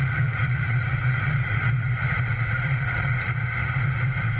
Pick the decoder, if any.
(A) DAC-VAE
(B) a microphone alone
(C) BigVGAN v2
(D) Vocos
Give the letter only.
D